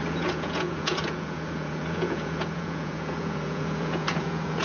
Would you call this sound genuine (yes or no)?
no